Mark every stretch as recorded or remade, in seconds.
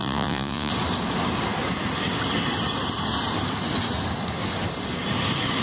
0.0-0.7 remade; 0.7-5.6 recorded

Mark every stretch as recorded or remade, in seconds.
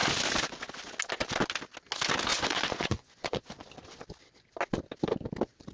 0.0-2.3 recorded; 2.3-3.7 remade; 3.7-5.7 recorded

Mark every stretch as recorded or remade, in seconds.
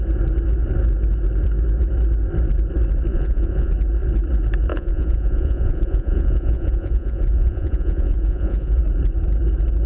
0.0-3.1 recorded; 3.1-3.7 remade; 3.7-4.7 recorded; 4.7-8.8 remade; 8.8-9.9 recorded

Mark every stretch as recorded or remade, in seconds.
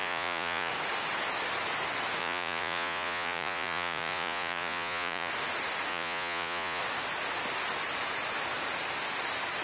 0.0-0.7 remade; 0.7-2.2 recorded; 2.2-5.3 remade; 5.3-5.9 recorded; 5.9-6.8 remade; 6.8-9.6 recorded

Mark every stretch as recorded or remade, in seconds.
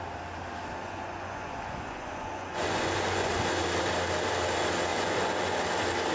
0.0-0.8 recorded; 0.8-3.3 remade; 3.3-4.9 recorded; 4.9-5.6 remade; 5.6-6.1 recorded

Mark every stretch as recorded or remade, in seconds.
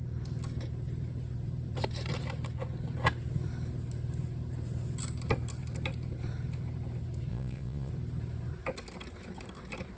0.0-7.3 recorded; 7.3-7.9 remade; 7.9-10.0 recorded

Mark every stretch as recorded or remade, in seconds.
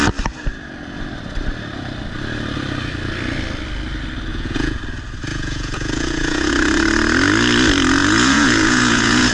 0.0-4.3 recorded; 4.3-4.8 remade; 4.8-5.3 recorded; 5.3-6.5 remade; 6.5-8.0 recorded; 8.0-9.3 remade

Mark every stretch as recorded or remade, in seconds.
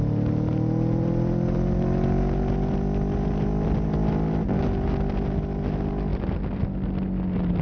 0.0-7.6 recorded